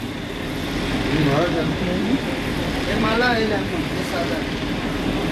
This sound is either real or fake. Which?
fake